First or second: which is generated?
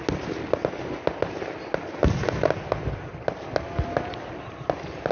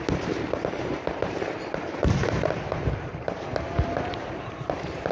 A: second